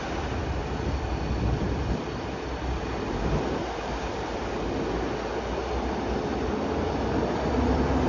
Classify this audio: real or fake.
real